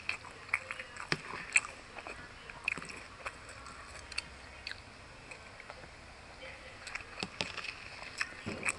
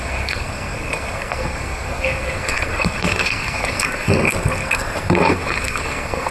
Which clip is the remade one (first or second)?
second